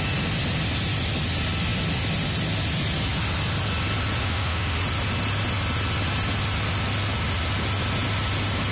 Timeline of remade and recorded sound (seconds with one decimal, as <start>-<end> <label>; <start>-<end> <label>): 0.0-4.2 recorded; 4.2-4.8 remade; 4.8-8.7 recorded